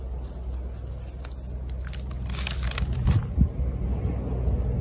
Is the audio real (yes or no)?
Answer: yes